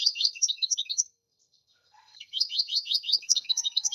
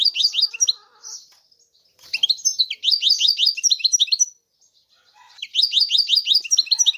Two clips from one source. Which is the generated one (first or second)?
first